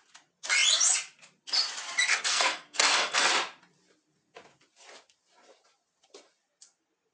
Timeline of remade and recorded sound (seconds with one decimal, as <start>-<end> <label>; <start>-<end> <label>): 0.0-2.1 recorded; 2.1-3.3 remade; 3.3-7.1 recorded